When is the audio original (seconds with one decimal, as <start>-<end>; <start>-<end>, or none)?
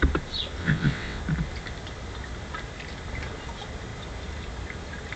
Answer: 0.0-0.6; 1.2-5.2